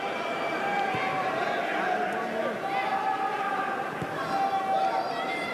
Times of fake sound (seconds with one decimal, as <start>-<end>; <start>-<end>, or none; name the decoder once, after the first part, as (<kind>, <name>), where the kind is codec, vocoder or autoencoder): none